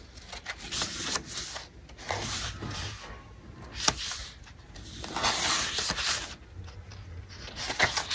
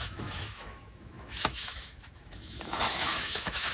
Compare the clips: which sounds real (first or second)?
first